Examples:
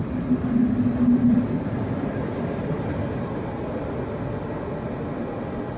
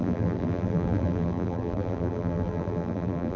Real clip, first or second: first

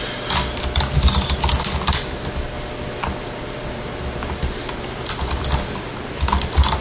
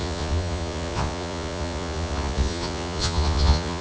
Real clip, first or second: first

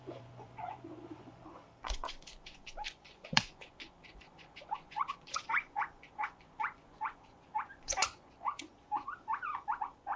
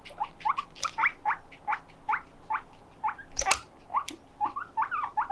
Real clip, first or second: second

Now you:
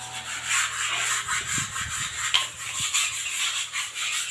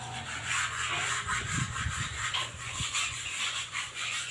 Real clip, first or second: first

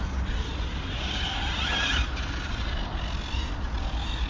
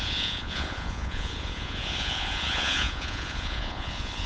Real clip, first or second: first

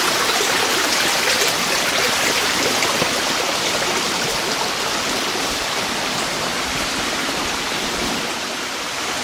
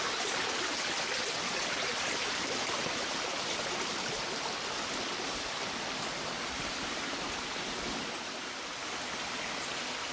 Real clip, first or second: second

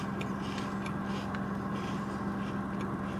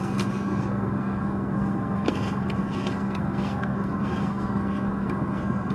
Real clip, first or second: first